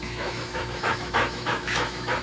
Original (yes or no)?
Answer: no